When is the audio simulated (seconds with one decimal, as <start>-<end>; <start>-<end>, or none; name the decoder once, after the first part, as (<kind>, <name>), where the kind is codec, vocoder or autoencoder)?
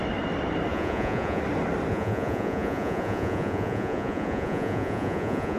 0.7-1.4 (vocoder, Vocos); 1.9-5.6